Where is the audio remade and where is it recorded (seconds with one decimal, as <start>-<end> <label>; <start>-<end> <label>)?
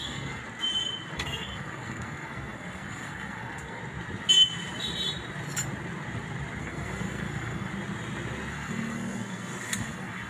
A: 0.0-0.4 remade; 0.4-1.1 recorded; 1.1-3.8 remade; 3.8-6.6 recorded; 6.6-7.7 remade; 7.7-8.5 recorded; 8.5-10.3 remade